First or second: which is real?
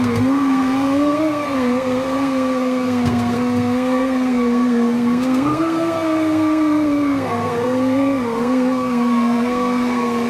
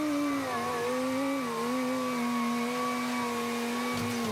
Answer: second